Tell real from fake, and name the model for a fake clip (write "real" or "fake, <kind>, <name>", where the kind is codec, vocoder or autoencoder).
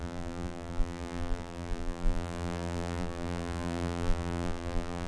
fake, vocoder, BigVGAN v2